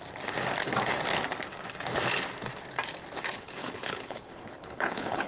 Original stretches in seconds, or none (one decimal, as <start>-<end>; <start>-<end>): 0.0-3.2